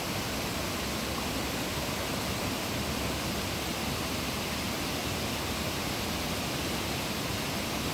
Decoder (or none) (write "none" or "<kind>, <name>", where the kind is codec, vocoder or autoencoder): none